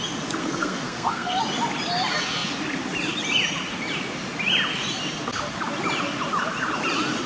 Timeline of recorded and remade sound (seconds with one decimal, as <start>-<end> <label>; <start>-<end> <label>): 0.0-0.4 recorded; 0.4-1.4 remade; 1.4-7.3 recorded